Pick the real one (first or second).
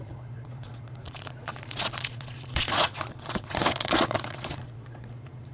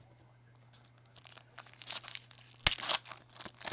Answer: second